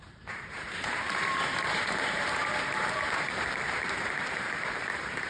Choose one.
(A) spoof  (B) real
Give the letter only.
A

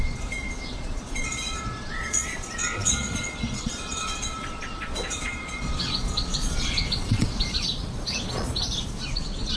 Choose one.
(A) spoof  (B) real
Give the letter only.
A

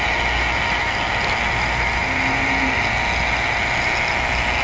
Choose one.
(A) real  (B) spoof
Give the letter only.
A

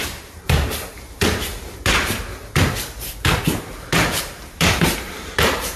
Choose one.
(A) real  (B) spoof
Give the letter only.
B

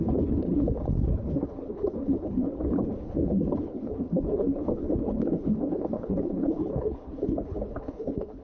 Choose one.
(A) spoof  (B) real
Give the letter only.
A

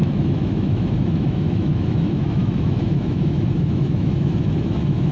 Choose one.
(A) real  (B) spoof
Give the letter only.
B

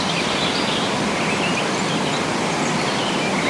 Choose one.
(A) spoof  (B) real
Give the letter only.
B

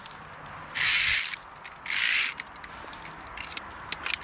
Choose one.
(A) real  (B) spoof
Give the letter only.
A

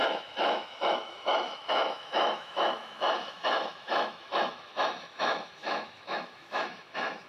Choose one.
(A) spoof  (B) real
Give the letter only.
A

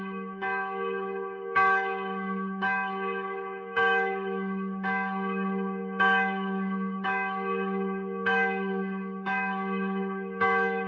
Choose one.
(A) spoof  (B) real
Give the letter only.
A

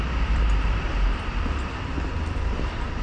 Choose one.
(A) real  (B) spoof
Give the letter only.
B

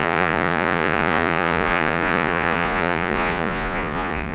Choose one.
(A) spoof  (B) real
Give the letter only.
A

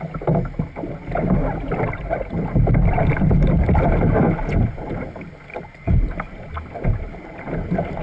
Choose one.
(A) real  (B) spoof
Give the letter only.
A